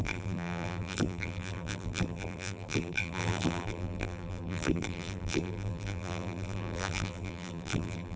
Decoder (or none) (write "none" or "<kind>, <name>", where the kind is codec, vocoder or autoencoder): vocoder, BigVGAN v2